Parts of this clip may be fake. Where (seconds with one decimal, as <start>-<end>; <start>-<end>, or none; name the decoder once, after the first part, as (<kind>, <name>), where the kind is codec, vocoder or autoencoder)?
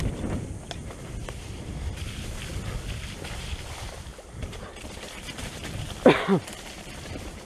1.2-2.5 (vocoder, BigVGAN v2); 4.1-5.6